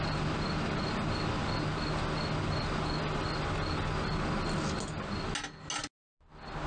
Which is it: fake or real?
real